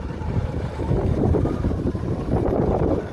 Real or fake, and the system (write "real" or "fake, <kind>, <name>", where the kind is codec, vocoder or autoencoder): fake, vocoder, BigVGAN v2